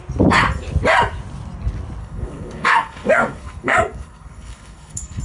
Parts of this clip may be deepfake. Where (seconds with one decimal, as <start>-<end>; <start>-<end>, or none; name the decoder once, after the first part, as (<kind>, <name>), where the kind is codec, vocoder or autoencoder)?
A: 2.0-5.2 (codec, SNAC)